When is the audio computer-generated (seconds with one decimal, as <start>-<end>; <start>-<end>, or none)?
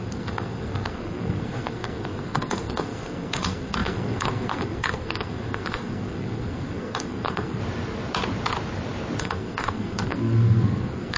0.0-7.6; 9.2-11.2